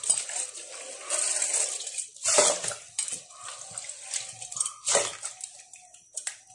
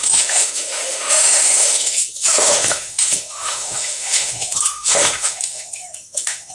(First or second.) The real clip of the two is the first